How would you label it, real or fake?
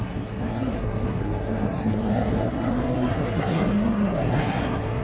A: fake